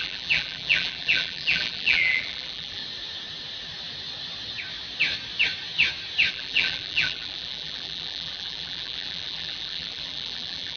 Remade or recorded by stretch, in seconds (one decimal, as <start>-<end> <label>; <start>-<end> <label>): 0.0-2.8 remade; 2.8-6.3 recorded; 6.3-10.8 remade